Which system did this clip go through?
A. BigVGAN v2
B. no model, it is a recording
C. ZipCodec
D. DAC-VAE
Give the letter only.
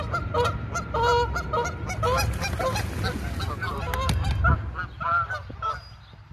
B